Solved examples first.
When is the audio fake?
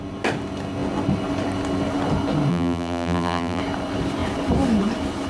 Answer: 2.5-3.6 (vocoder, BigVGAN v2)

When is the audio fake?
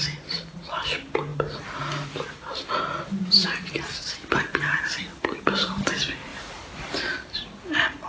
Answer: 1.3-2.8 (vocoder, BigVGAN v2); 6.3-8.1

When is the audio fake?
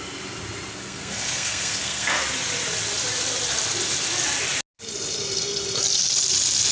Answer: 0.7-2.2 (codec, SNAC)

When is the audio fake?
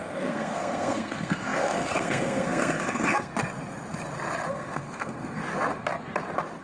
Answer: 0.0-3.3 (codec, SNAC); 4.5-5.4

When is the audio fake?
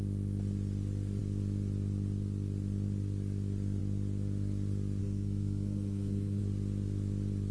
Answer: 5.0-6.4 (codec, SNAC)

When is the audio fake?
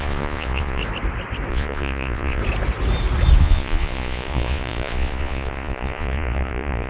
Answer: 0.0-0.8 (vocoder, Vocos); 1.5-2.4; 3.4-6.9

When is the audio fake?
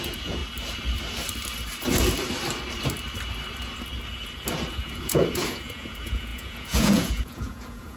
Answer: 0.0-0.4 (vocoder, Vocos); 4.7-8.0